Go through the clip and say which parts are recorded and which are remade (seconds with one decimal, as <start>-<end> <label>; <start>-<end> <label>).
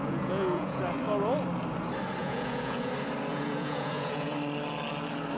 0.0-0.8 remade; 0.8-2.2 recorded; 2.2-2.9 remade; 2.9-3.3 recorded; 3.3-4.3 remade; 4.3-5.4 recorded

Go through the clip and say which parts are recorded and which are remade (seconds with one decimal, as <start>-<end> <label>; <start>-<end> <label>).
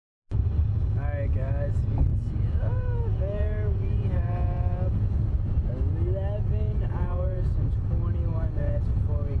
0.0-2.1 recorded; 2.1-5.2 remade; 5.2-6.7 recorded; 6.7-7.6 remade; 7.6-8.3 recorded; 8.3-8.8 remade; 8.8-9.4 recorded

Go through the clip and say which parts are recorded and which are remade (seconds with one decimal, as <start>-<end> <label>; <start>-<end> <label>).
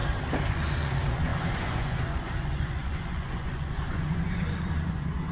0.0-0.5 recorded; 0.5-5.3 remade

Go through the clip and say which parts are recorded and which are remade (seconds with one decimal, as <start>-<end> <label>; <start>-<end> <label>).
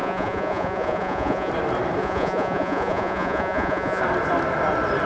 0.0-1.5 remade; 1.5-2.0 recorded; 2.0-4.0 remade; 4.0-5.1 recorded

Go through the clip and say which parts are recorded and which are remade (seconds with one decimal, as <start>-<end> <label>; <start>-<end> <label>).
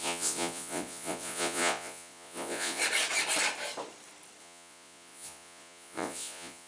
0.0-2.8 remade; 2.8-4.4 recorded; 4.4-6.7 remade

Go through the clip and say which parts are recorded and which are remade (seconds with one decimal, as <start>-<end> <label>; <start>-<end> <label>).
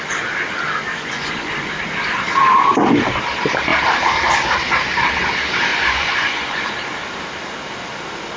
0.0-0.9 recorded; 0.9-1.7 remade; 1.7-5.7 recorded; 5.7-6.7 remade; 6.7-8.4 recorded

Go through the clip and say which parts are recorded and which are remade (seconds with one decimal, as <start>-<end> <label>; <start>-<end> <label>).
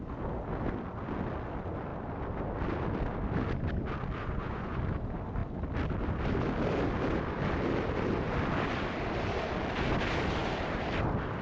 0.0-4.2 recorded; 4.2-4.8 remade; 4.8-11.4 recorded